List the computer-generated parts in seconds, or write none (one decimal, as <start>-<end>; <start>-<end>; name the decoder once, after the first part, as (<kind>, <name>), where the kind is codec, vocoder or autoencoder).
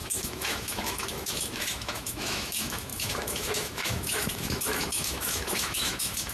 0.0-6.3 (autoencoder, DAC-VAE)